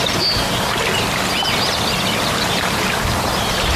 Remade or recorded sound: recorded